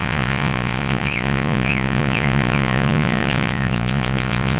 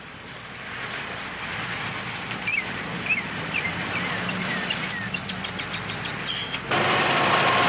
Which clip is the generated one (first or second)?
first